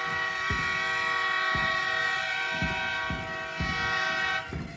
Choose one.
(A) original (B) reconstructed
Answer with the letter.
A